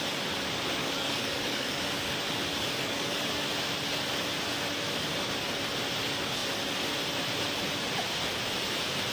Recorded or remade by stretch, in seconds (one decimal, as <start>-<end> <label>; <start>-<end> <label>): 0.0-0.8 recorded; 0.8-2.1 remade; 2.1-2.6 recorded; 2.6-3.2 remade; 3.2-9.1 recorded